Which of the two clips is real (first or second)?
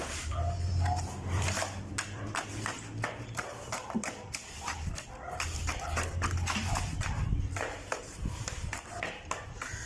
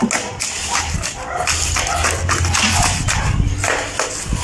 second